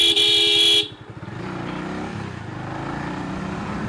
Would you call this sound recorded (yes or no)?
yes